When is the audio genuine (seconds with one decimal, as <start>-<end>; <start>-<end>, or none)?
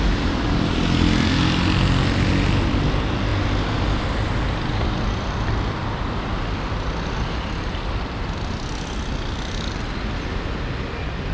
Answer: 0.0-11.3